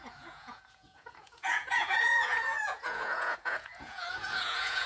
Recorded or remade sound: remade